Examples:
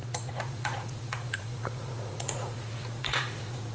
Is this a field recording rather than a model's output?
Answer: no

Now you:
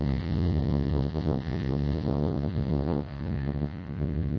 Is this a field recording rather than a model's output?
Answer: no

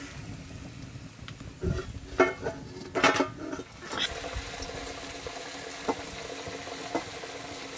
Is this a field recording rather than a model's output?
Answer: yes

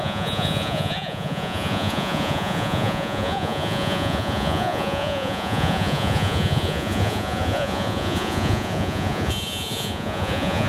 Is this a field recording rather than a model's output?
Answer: no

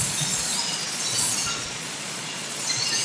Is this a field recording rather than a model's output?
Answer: no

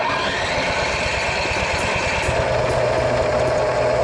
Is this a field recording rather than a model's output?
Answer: yes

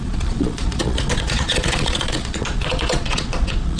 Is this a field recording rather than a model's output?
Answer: no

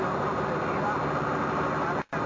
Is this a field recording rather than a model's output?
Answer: yes